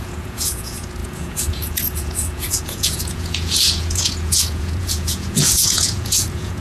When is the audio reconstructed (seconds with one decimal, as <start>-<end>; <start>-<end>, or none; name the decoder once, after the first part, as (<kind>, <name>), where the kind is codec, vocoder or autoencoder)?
0.0-6.6 (vocoder, Vocos)